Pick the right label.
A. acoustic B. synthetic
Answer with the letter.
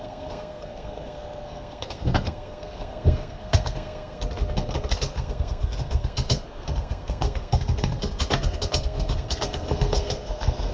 B